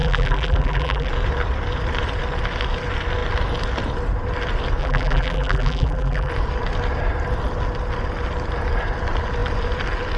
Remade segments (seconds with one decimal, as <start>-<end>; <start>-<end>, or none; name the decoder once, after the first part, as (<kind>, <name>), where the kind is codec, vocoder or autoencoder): 0.0-1.1 (vocoder, BigVGAN v2); 4.8-6.3